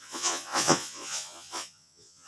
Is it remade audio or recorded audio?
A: remade